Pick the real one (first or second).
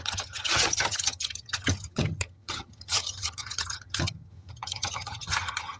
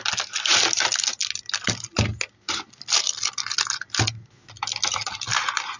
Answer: second